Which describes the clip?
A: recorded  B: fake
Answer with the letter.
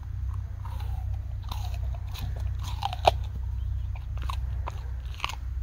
A